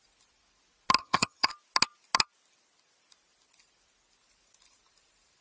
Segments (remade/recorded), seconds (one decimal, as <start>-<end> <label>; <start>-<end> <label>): 0.0-1.0 recorded; 1.0-1.5 remade; 1.5-5.4 recorded